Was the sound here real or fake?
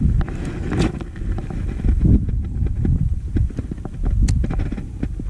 real